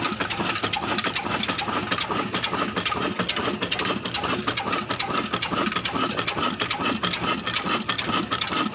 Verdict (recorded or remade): recorded